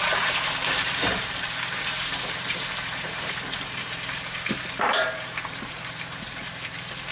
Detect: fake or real fake